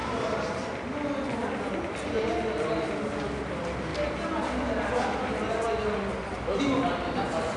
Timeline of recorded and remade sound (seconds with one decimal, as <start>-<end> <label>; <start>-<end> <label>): 0.0-7.6 recorded

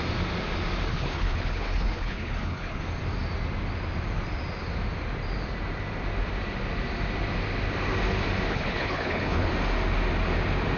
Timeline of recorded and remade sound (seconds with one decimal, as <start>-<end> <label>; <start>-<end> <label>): 0.0-0.9 recorded; 0.9-2.8 remade; 2.8-8.5 recorded; 8.5-9.5 remade; 9.5-10.8 recorded

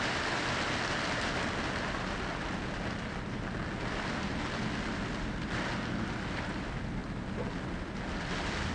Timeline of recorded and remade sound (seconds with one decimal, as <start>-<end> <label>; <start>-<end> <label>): 0.0-8.7 recorded